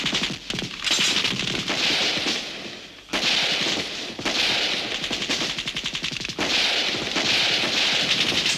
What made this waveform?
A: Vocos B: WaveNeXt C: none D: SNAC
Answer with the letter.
C